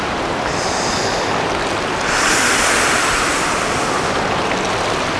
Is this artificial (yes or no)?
no